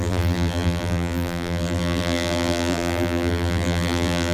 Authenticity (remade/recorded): remade